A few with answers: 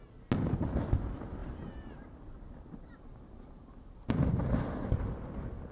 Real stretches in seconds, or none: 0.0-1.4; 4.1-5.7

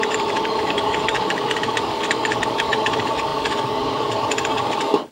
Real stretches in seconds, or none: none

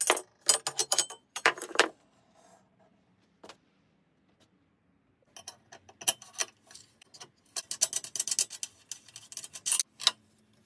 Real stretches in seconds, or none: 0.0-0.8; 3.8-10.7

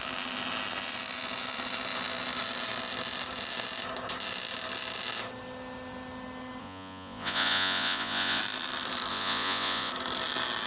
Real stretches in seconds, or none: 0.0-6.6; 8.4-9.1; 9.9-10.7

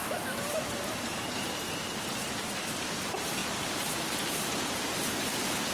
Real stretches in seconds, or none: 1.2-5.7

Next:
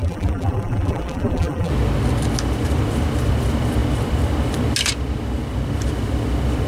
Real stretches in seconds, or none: 1.7-6.7